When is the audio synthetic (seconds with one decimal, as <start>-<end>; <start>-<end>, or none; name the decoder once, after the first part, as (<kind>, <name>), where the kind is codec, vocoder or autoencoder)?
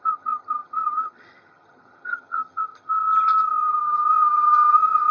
0.0-5.1 (vocoder, HiFi-GAN)